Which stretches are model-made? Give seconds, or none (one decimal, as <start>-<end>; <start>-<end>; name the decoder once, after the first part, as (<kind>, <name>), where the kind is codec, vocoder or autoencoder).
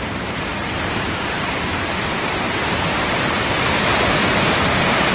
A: 0.0-0.5 (vocoder, BigVGAN v2); 1.3-5.1